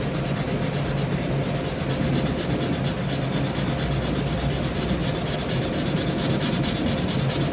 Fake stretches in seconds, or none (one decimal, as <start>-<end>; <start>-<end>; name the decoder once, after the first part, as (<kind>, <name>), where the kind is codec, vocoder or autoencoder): 5.0-6.0 (vocoder, BigVGAN v2)